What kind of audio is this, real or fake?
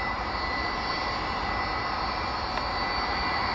real